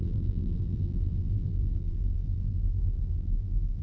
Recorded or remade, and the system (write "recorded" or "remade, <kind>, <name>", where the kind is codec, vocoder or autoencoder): remade, vocoder, BigVGAN v2